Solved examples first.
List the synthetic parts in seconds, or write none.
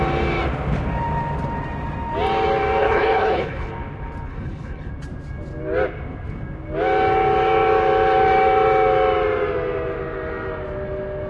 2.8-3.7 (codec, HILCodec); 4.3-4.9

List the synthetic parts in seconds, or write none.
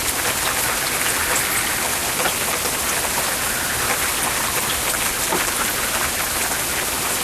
none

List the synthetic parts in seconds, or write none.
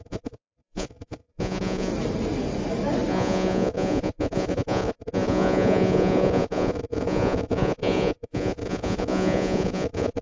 0.0-1.9 (vocoder, Vocos); 3.1-10.2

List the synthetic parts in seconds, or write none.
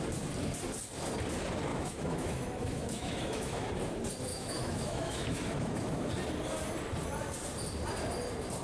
1.7-3.7 (autoencoder, DAC-VAE); 4.3-6.1